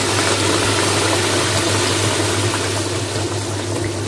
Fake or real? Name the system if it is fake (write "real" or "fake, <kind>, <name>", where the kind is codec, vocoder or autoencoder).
real